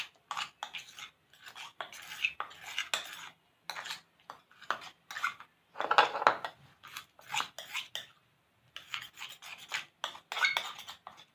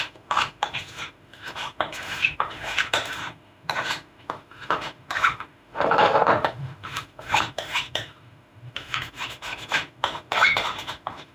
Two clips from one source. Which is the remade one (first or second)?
second